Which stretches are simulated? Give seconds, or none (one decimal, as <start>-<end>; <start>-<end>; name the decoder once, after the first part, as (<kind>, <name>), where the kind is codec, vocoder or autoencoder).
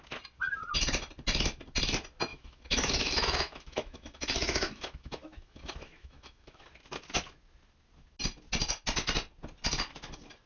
2.3-6.6 (autoencoder, DAC-VAE)